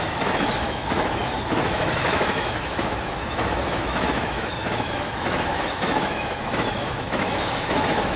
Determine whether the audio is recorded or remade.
remade